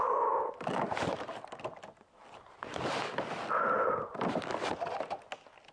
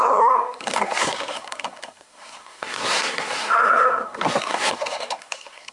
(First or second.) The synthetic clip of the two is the second